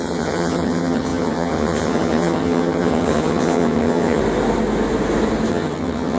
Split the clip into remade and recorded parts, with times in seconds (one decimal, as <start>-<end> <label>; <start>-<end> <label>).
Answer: 0.0-4.2 remade; 4.2-5.5 recorded; 5.5-6.2 remade